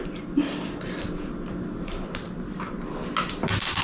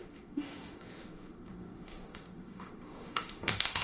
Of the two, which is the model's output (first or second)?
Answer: second